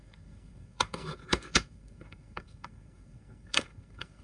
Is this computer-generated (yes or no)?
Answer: yes